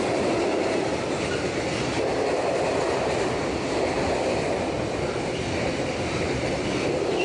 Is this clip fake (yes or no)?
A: no